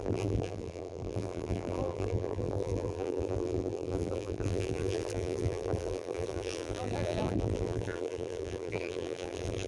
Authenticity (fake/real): fake